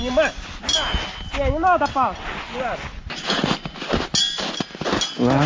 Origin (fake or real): real